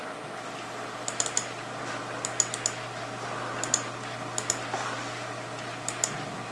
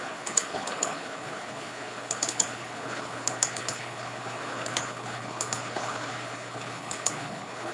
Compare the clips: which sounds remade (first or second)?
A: second